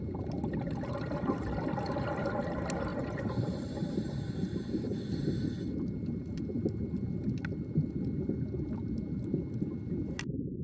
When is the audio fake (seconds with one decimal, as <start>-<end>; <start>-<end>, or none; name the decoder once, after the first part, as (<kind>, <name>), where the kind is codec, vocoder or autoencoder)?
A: 2.9-4.7 (vocoder, BigVGAN v2)